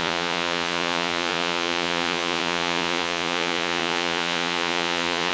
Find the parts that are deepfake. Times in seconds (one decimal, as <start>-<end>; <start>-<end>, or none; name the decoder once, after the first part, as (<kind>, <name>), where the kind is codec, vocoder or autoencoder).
0.0-5.3 (vocoder, Vocos)